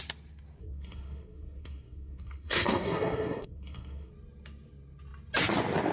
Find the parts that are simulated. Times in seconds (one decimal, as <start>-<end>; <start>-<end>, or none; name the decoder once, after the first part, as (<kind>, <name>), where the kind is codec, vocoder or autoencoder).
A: 0.6-4.1 (codec, SNAC)